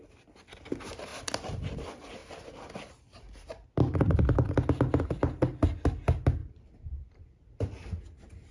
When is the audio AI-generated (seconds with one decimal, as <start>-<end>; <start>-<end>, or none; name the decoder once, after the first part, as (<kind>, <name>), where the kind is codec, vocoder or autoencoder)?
6.4-8.5 (vocoder, BigVGAN v2)

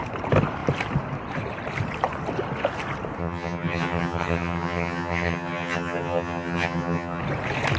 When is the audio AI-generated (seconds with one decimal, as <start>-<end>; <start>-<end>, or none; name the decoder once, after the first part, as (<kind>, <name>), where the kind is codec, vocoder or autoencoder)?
3.2-7.2 (vocoder, HiFi-GAN)

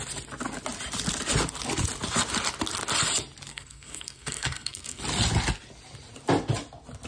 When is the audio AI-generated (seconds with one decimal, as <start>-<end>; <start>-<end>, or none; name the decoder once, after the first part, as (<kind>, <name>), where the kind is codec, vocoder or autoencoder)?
3.5-5.0 (codec, SNAC)